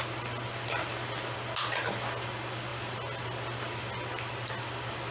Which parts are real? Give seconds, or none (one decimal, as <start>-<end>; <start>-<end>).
0.0-5.1